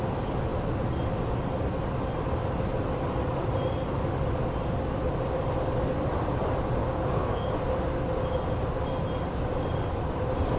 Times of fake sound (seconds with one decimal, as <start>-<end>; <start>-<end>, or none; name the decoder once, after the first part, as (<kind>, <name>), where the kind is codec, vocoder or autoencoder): 6.8-7.5 (codec, DAC)